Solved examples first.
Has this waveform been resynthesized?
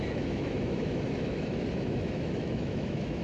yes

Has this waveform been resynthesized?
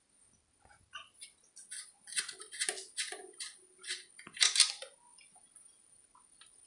no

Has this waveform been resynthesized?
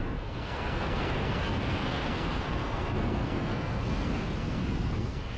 yes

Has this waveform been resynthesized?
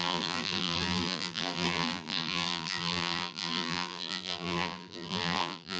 yes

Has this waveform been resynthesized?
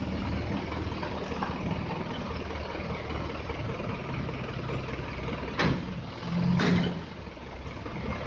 no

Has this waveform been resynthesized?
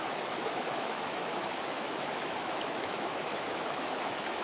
yes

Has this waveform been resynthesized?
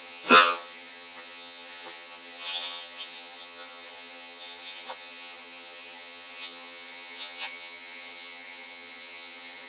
yes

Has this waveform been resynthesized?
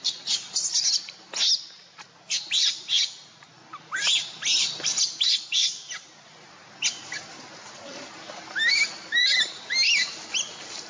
no